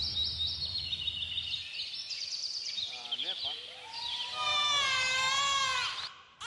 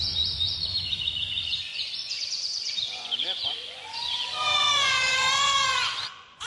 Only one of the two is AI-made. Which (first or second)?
second